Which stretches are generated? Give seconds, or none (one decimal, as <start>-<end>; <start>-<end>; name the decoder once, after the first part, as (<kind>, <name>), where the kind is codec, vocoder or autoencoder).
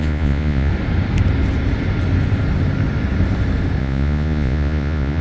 0.0-0.7 (vocoder, Vocos); 3.8-5.2